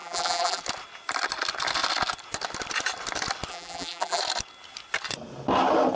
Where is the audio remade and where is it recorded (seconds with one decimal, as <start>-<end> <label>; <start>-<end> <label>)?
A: 0.0-0.6 remade; 0.6-3.5 recorded; 3.5-4.2 remade; 4.2-6.0 recorded